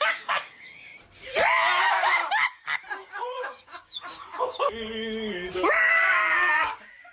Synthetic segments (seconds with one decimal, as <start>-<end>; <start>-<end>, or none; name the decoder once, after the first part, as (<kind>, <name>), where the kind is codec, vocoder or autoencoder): 0.0-0.9 (codec, DAC); 1.8-2.2; 3.0-7.1

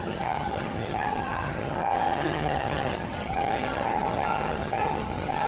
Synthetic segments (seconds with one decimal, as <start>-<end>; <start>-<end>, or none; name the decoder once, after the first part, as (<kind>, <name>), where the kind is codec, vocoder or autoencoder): 0.0-5.5 (vocoder, HiFi-GAN)